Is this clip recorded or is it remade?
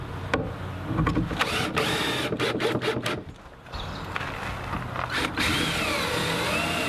recorded